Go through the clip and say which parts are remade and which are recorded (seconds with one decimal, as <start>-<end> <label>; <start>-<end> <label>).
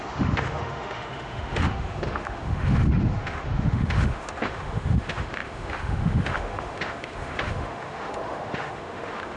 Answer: 0.0-9.4 remade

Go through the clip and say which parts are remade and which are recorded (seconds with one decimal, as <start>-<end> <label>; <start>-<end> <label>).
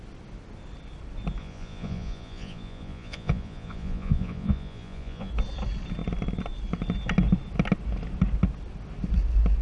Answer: 0.0-1.4 recorded; 1.4-5.3 remade; 5.3-9.6 recorded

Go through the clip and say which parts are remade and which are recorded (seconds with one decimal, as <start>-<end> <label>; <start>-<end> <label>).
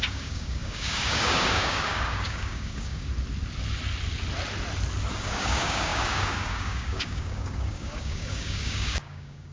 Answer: 0.0-3.1 remade; 3.1-5.1 recorded; 5.1-9.5 remade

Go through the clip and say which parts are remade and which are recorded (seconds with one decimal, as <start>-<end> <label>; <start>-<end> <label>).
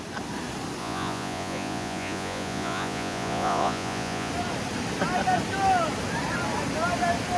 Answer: 0.0-0.8 recorded; 0.8-4.3 remade; 4.3-7.4 recorded